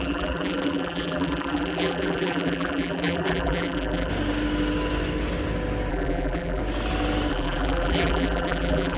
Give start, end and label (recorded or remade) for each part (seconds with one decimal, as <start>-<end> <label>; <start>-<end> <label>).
0.0-4.1 remade; 4.1-5.9 recorded; 5.9-6.6 remade; 6.6-7.3 recorded; 7.3-9.0 remade